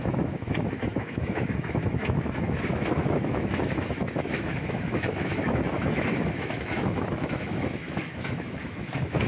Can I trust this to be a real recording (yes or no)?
no